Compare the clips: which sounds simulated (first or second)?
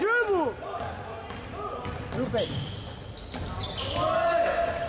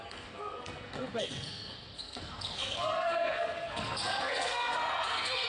second